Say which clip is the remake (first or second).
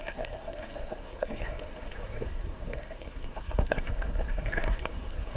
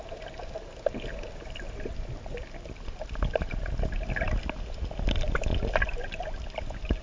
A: first